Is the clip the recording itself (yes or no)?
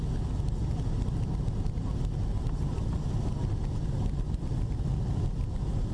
yes